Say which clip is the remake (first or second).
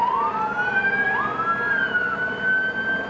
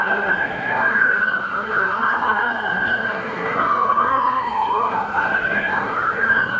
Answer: second